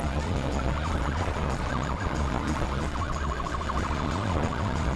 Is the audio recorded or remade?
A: remade